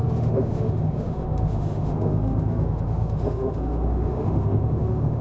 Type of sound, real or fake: fake